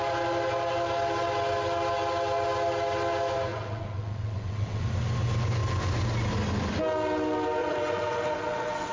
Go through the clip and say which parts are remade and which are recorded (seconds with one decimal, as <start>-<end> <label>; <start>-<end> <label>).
0.0-3.5 recorded; 3.5-4.8 remade; 4.8-7.6 recorded; 7.6-8.9 remade